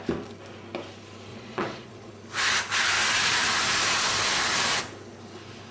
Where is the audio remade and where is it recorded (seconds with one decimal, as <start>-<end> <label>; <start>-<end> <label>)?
0.0-1.3 recorded; 1.3-2.1 remade; 2.1-5.7 recorded